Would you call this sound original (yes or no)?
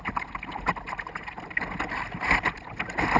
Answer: yes